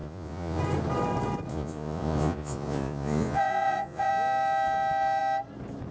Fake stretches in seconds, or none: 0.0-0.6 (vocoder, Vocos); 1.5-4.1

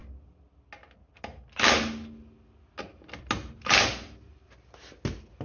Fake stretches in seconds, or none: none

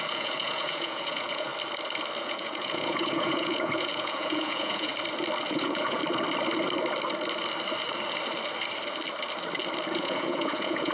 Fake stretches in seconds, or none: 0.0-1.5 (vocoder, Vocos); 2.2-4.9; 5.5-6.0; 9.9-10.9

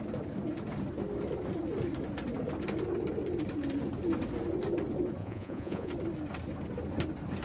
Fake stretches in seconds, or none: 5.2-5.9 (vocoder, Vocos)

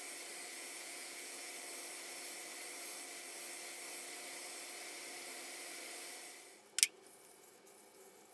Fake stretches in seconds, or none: 0.5-1.5 (vocoder, Vocos)

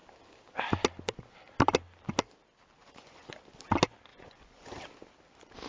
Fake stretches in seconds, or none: 2.8-3.3 (vocoder, Vocos); 4.1-4.8

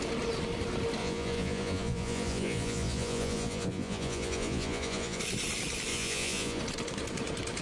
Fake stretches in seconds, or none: 1.0-5.2 (vocoder, Vocos); 5.9-6.6